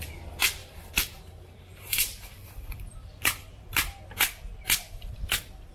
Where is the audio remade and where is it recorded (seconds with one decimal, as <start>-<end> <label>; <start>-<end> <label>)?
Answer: 0.0-0.6 recorded; 0.6-4.0 remade; 4.0-5.7 recorded